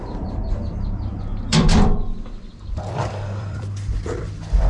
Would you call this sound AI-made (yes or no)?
yes